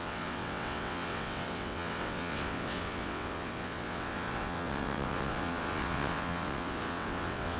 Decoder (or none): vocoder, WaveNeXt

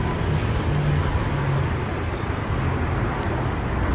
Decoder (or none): none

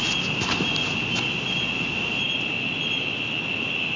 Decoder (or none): none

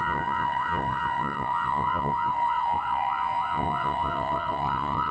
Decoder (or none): vocoder, WaveNeXt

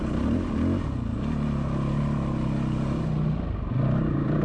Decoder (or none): none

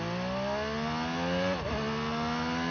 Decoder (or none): none